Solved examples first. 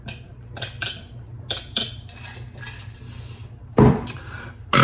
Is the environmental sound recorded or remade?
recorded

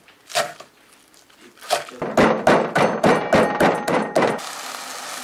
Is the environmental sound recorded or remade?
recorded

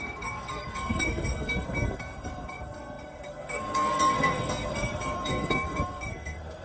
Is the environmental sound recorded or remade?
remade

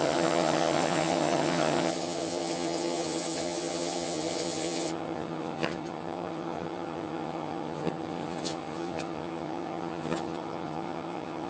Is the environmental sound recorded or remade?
remade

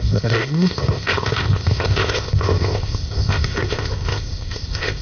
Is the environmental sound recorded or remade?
remade